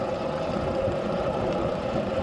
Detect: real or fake fake